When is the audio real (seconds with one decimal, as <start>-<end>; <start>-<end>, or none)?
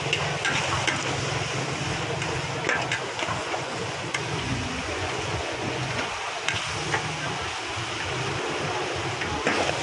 0.0-3.4; 6.1-9.8